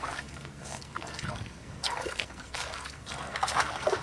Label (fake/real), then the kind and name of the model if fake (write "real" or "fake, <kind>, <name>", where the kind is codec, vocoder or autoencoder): fake, codec, SNAC